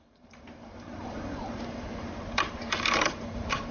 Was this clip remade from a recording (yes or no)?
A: yes